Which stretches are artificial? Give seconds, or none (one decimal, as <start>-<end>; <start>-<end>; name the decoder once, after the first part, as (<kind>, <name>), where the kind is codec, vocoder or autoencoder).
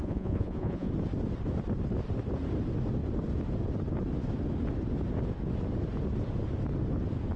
0.0-0.9 (vocoder, Vocos)